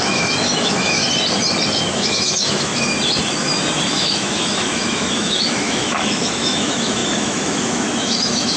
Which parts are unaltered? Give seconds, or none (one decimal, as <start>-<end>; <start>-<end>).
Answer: 1.0-1.9; 2.7-3.9